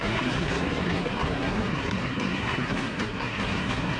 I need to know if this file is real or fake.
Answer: fake